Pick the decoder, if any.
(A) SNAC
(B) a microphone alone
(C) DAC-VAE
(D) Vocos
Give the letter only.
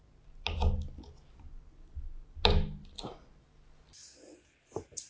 B